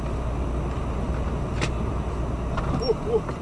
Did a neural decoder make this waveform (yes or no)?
no